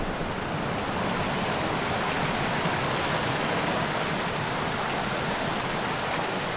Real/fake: real